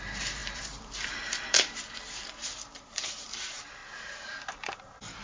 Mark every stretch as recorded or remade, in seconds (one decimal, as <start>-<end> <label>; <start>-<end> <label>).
0.0-3.8 remade; 3.8-4.5 recorded; 4.5-5.2 remade